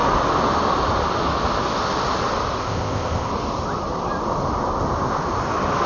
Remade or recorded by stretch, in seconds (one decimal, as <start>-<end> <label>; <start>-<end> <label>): 0.0-2.6 recorded; 2.6-3.3 remade; 3.3-5.9 recorded